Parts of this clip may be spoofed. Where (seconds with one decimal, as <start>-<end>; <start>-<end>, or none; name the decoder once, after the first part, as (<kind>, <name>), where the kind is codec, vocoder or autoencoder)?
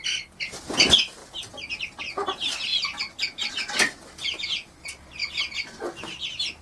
none